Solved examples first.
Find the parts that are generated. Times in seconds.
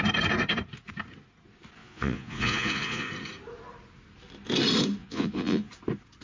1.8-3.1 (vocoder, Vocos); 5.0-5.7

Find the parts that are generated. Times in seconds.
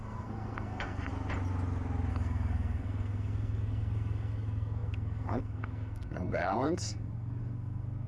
0.0-1.1 (codec, SNAC); 2.1-8.1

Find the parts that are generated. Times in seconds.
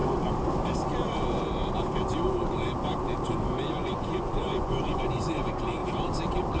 3.7-5.8 (vocoder, Vocos)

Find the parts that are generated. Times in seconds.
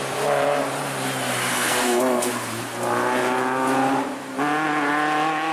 1.5-2.3 (codec, SNAC)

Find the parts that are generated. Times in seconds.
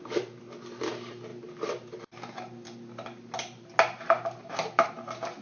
none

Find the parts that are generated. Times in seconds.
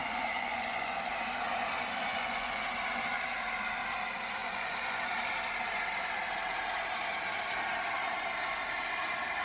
0.0-1.1 (vocoder, Vocos); 2.1-2.6; 4.4-5.0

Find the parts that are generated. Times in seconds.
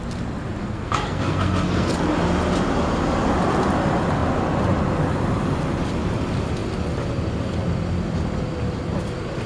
0.6-1.9 (codec, SNAC)